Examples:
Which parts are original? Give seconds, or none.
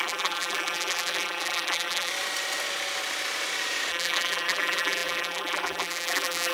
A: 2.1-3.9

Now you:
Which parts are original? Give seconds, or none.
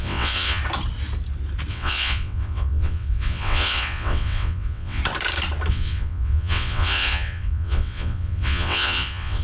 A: 0.6-1.7; 5.0-5.7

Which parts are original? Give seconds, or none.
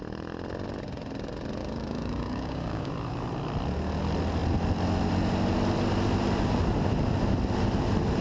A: 0.0-1.6; 2.9-8.2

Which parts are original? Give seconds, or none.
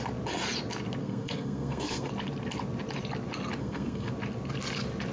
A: 0.0-1.0; 2.1-3.6; 4.1-5.1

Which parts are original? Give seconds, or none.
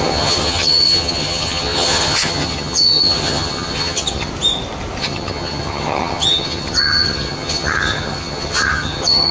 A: 4.3-5.0